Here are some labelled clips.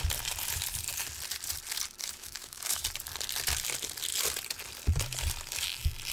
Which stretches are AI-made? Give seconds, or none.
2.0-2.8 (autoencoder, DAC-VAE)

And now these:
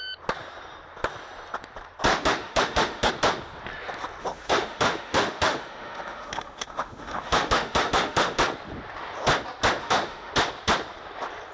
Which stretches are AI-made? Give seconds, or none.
2.1-3.1 (autoencoder, DAC-VAE); 4.2-8.4; 9.8-10.3

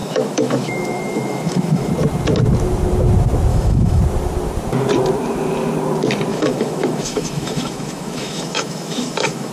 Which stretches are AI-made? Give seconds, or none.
0.0-1.9 (autoencoder, DAC-VAE); 3.5-4.0; 6.3-9.5